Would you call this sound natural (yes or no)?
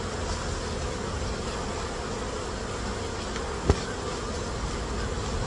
yes